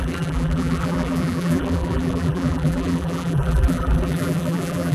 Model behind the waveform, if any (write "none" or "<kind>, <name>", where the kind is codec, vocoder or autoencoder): vocoder, BigVGAN v2